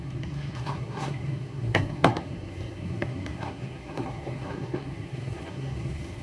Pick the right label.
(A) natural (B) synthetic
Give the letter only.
B